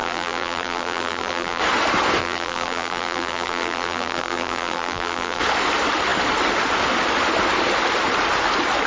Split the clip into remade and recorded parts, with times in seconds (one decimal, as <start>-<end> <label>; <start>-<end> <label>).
0.0-1.6 remade; 1.6-2.2 recorded; 2.2-5.4 remade; 5.4-8.9 recorded